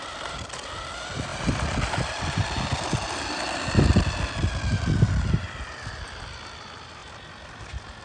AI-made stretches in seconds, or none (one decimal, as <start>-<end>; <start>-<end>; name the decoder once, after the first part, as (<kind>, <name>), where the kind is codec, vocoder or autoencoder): none